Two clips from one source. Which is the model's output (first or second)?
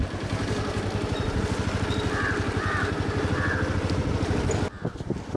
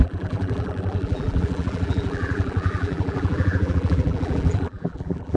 second